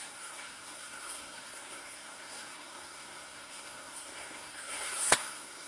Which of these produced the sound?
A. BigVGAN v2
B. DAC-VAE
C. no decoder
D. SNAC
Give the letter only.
D